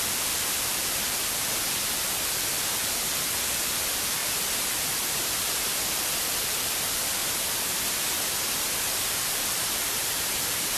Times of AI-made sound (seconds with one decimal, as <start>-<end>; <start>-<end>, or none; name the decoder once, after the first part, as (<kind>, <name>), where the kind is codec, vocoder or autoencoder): 0.0-7.2 (vocoder, BigVGAN v2); 8.8-10.8